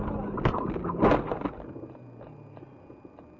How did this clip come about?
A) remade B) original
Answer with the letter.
B